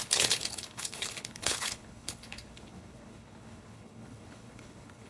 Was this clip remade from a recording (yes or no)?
yes